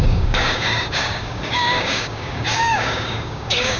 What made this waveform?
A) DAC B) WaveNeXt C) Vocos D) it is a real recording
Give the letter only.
A